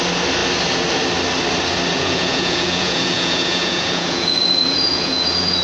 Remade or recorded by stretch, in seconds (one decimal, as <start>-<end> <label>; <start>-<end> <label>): 0.0-1.9 recorded; 1.9-5.6 remade